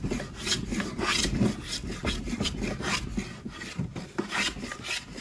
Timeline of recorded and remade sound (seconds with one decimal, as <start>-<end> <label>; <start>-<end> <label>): 0.0-5.2 recorded

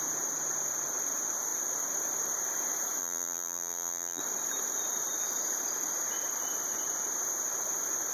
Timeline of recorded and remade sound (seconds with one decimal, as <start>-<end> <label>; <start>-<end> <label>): 0.0-3.0 recorded; 3.0-4.2 remade; 4.2-8.1 recorded

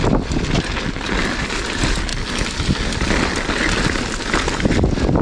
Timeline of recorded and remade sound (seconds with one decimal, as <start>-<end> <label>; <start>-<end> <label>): 0.0-5.2 recorded

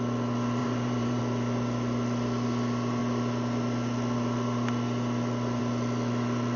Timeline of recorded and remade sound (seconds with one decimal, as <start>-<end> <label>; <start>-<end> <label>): 0.0-0.6 recorded; 0.6-1.2 remade; 1.2-6.6 recorded

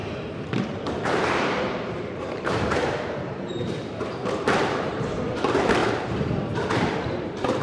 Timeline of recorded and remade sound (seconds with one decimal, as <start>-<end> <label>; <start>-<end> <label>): 0.0-7.6 remade